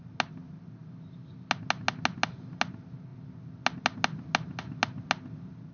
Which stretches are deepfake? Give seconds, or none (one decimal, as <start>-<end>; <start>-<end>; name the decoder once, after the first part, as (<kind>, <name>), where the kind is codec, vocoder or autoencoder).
none